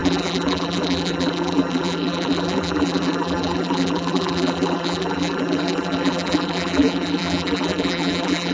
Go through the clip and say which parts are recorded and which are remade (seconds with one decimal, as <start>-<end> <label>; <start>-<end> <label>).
0.0-8.5 remade